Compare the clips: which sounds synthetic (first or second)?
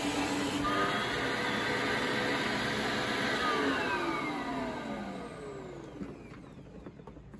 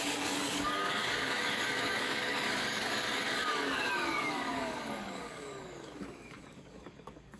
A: second